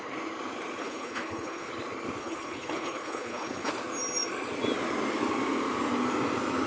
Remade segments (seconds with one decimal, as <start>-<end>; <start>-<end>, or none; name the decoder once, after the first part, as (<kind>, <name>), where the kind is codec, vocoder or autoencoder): 0.8-1.7 (codec, HILCodec); 2.2-3.7